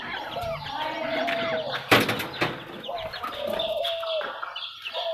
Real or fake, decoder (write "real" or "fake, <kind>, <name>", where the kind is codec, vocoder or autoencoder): real